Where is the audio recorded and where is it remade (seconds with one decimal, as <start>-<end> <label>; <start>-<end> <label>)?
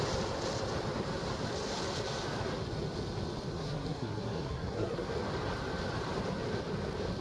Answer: 0.0-3.5 recorded; 3.5-5.1 remade; 5.1-7.2 recorded